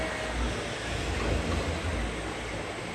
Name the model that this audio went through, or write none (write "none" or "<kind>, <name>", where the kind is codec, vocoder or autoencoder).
none